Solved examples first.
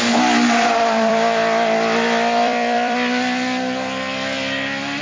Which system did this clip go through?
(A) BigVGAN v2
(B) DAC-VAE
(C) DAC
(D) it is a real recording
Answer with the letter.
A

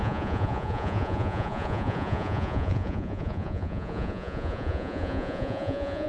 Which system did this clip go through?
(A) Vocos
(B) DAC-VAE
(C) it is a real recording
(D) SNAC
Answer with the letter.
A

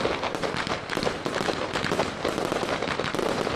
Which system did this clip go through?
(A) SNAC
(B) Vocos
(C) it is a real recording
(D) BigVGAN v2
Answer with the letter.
D